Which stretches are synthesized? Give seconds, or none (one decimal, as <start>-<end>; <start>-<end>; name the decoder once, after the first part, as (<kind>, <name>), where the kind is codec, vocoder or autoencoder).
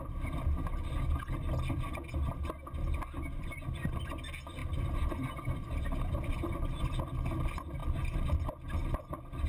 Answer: none